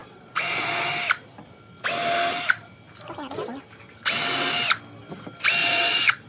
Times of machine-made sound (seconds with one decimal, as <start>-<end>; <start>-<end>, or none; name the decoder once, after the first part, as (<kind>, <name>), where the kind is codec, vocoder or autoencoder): 0.0-0.8 (vocoder, Vocos); 5.6-6.3

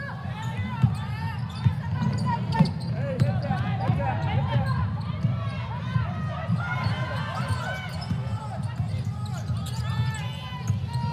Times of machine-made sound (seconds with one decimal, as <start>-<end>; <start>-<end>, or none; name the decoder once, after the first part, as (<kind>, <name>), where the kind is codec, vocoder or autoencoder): none

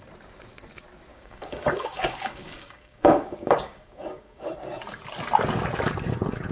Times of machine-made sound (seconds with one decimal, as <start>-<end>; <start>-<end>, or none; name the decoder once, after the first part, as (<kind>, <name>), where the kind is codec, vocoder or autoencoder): 1.1-4.5 (codec, DAC)

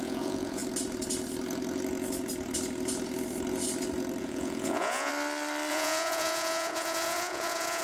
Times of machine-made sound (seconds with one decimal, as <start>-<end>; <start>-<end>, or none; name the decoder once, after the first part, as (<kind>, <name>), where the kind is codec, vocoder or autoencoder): 0.0-0.6 (vocoder, Vocos); 4.2-5.1; 5.7-7.8

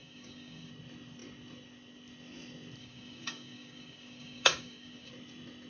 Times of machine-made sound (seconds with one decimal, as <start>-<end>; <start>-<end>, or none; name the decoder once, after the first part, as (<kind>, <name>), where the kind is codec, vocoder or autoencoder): 0.0-0.7 (codec, DAC); 2.8-5.1